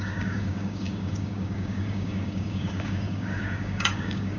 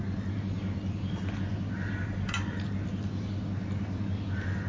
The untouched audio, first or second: second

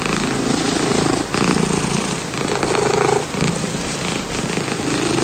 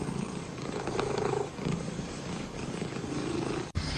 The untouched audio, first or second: first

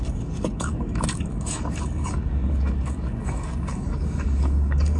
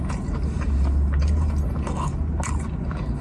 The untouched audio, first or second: second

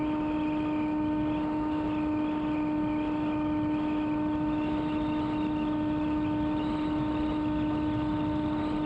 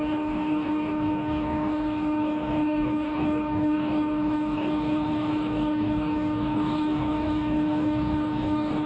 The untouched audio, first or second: first